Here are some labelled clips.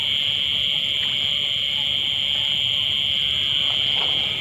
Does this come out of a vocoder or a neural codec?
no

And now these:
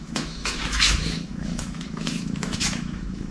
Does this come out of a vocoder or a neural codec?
yes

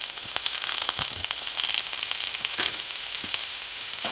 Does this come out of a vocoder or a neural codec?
yes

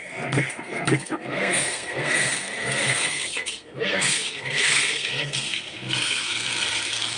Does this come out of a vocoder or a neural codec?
yes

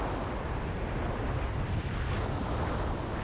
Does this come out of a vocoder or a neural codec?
no